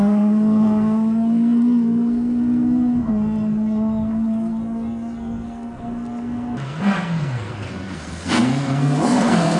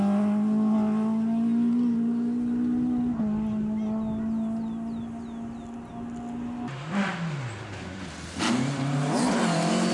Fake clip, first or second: first